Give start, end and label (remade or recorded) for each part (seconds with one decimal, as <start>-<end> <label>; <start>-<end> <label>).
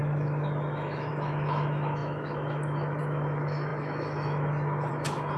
0.0-5.4 remade